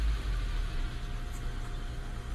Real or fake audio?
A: real